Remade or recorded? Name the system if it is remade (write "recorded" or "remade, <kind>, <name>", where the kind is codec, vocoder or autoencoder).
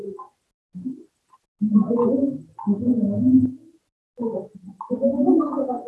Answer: recorded